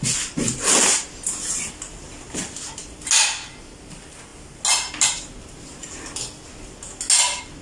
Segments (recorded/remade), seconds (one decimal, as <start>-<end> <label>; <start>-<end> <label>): 0.0-7.6 recorded